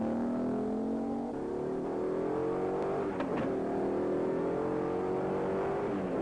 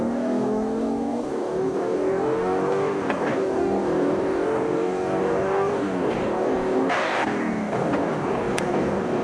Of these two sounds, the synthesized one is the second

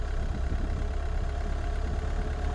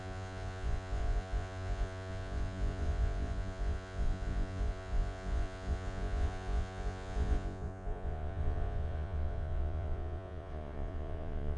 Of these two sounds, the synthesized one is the second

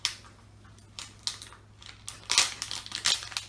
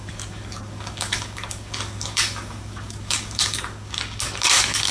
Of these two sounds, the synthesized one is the second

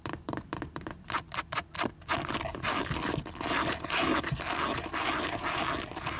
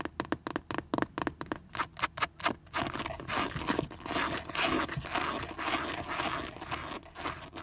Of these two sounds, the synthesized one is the first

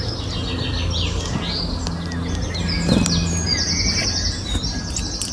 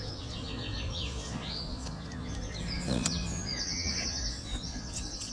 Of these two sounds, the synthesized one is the second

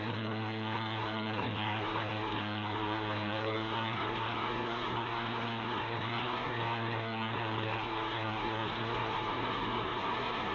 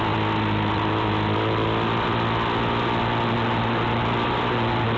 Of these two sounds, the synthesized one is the first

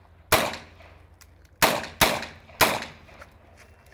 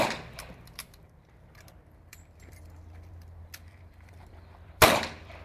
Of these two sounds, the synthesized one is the second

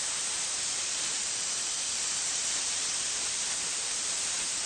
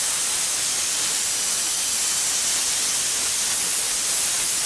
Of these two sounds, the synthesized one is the first